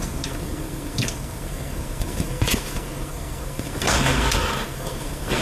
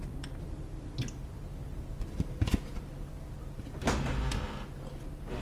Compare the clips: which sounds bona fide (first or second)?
second